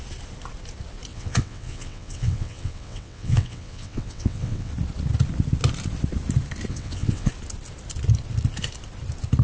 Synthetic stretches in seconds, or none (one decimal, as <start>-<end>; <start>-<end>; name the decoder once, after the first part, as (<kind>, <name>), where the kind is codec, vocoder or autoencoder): 1.1-4.7 (vocoder, WaveNeXt); 6.7-7.3